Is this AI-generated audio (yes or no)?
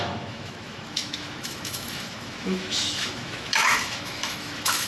yes